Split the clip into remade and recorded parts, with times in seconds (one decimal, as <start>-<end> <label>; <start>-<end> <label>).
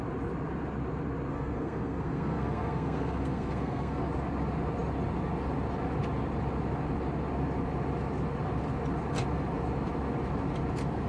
0.0-1.3 recorded; 1.3-4.0 remade; 4.0-11.1 recorded